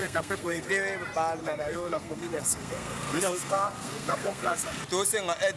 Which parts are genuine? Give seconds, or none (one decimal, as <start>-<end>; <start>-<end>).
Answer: 0.7-1.4; 4.8-5.6